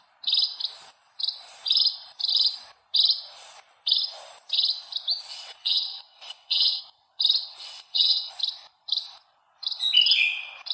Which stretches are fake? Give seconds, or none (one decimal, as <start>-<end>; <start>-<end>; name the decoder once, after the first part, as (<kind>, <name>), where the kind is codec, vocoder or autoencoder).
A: 5.3-6.8 (vocoder, WaveNeXt); 7.6-8.3